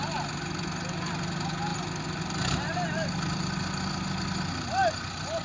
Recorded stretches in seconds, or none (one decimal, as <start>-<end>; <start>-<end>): 0.0-5.4